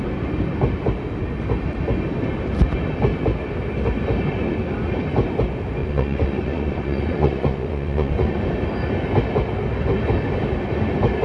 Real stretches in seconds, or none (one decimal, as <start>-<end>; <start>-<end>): 0.0-5.8; 8.4-11.2